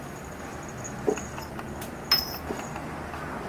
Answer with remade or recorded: recorded